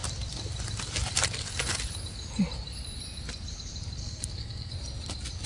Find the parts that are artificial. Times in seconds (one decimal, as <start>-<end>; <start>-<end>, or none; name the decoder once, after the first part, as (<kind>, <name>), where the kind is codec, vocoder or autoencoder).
4.0-4.7 (codec, SNAC)